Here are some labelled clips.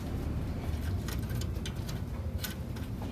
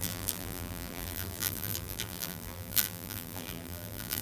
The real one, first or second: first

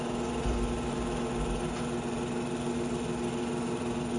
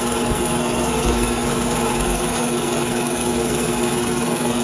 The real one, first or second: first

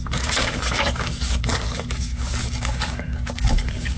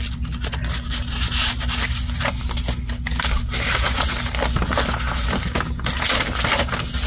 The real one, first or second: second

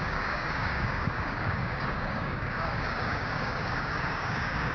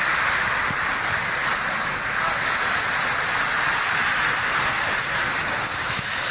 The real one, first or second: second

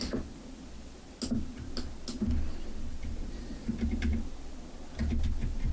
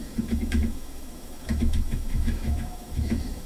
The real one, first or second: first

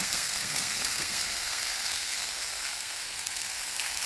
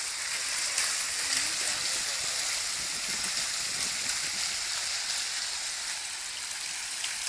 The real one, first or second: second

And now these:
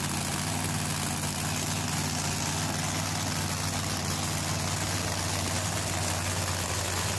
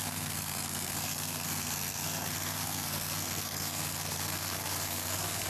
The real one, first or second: first